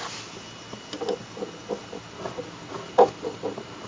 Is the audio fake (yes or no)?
no